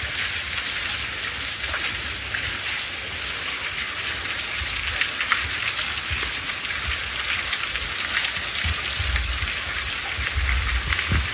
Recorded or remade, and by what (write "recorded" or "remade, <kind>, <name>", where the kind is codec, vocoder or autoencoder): recorded